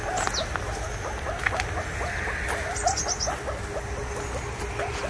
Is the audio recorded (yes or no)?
yes